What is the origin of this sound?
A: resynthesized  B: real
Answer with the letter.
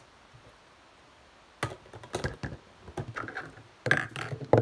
B